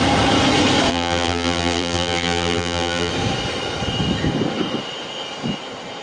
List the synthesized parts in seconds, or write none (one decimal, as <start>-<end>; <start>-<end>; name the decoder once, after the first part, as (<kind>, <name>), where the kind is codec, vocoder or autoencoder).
0.9-3.1 (vocoder, BigVGAN v2)